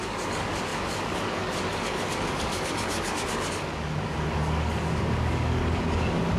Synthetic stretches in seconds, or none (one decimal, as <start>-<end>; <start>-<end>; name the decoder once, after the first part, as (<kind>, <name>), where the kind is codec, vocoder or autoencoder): 0.0-6.4 (codec, DAC)